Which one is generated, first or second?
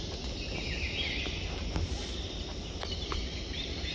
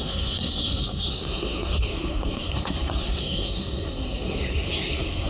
second